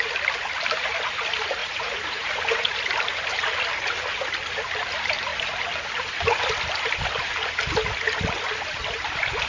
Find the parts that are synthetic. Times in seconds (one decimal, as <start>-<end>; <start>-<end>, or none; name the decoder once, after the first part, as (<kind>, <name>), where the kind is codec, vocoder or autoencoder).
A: 1.6-2.8 (vocoder, Vocos)